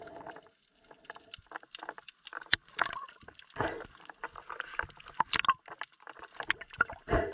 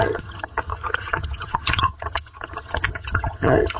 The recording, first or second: first